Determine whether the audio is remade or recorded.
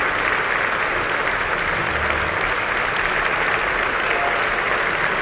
recorded